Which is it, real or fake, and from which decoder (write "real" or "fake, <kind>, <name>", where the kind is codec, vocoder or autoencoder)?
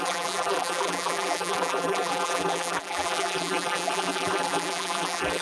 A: fake, vocoder, BigVGAN v2